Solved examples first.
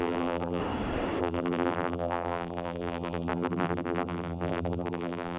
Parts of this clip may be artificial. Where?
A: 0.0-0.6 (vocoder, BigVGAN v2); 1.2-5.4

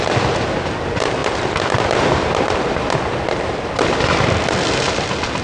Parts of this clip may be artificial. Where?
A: none

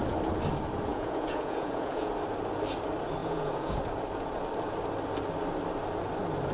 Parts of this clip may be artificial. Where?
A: 0.9-2.1 (vocoder, Vocos); 3.2-3.8

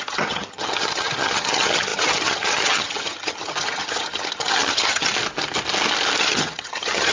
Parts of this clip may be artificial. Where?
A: 0.0-5.1 (vocoder, HiFi-GAN); 6.2-7.1

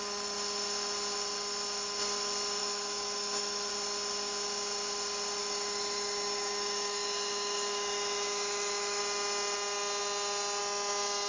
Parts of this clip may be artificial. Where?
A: 2.6-3.7 (autoencoder, DAC-VAE); 5.4-9.0